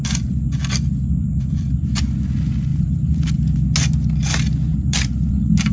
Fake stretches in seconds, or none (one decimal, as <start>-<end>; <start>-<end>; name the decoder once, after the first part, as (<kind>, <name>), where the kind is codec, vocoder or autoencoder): 2.7-3.3 (vocoder, BigVGAN v2); 4.7-5.3